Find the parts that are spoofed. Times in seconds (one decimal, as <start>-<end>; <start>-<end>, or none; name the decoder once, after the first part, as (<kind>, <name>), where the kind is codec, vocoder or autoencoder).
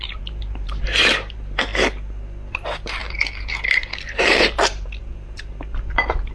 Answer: 0.0-1.7 (vocoder, BigVGAN v2); 2.5-6.3